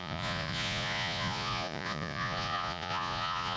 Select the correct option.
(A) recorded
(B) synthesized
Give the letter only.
B